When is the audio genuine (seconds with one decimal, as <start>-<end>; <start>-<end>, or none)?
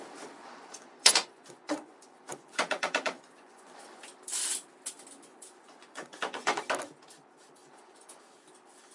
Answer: 0.0-0.4; 3.8-5.3; 6.6-7.6; 8.2-8.9